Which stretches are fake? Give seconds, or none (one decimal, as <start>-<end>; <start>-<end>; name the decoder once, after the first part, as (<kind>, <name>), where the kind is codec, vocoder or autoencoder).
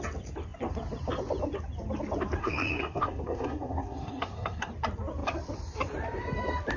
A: 2.4-4.7 (codec, SNAC)